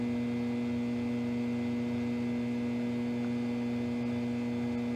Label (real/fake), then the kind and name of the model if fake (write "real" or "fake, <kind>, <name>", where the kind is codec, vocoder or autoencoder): real